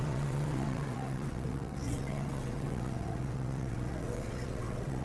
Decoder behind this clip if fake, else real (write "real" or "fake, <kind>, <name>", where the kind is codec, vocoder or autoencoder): fake, vocoder, WaveNeXt